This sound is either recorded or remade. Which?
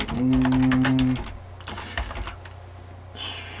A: recorded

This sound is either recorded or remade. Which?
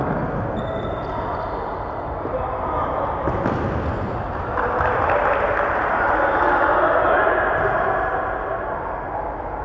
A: recorded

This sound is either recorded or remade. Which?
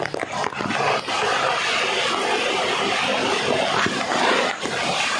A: recorded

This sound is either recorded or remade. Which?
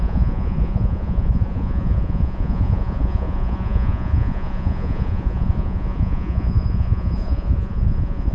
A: remade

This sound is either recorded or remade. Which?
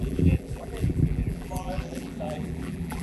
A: remade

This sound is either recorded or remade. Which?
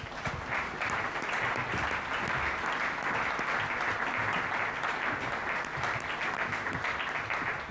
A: recorded